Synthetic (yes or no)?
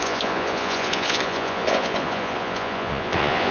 yes